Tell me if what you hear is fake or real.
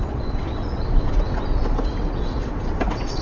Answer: fake